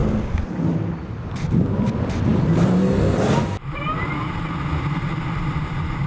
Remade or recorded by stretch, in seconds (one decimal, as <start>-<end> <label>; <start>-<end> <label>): 0.0-6.1 recorded